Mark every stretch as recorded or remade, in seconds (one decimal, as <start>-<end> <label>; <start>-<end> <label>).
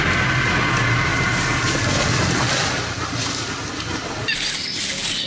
0.0-5.3 recorded